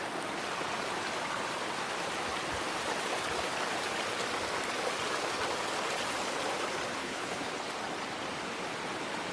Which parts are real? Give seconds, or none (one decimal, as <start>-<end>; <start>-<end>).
0.0-7.0; 7.5-9.3